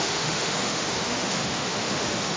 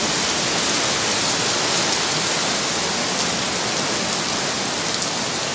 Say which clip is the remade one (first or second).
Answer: first